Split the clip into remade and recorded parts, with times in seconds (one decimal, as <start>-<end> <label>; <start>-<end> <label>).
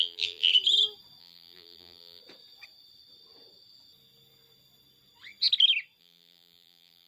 0.0-0.5 remade; 0.5-1.2 recorded; 1.2-2.2 remade; 2.2-6.0 recorded; 6.0-7.1 remade